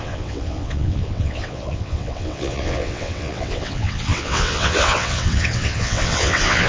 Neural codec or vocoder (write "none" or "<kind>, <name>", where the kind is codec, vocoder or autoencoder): vocoder, WaveNeXt